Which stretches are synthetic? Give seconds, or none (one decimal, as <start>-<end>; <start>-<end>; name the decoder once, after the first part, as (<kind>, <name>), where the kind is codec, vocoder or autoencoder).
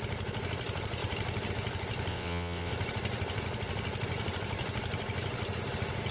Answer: 2.1-2.7 (vocoder, WaveNeXt)